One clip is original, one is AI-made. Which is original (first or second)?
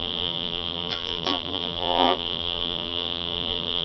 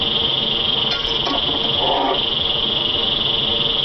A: second